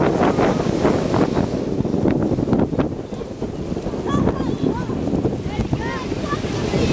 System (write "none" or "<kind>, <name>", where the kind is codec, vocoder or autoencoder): none